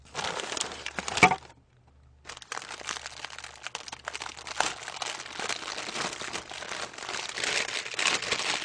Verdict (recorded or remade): recorded